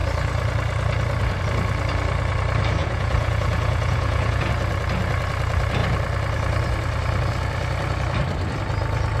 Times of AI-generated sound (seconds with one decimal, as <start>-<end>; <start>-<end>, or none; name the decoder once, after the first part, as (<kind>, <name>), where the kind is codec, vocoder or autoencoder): 2.8-4.5 (vocoder, Vocos)